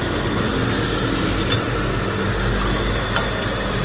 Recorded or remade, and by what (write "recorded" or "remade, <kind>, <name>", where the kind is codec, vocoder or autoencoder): recorded